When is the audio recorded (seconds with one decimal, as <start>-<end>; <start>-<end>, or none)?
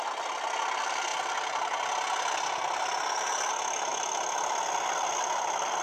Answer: 0.0-5.8